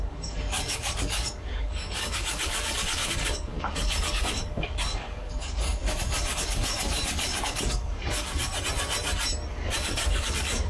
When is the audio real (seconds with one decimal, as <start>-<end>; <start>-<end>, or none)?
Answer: 8.5-9.5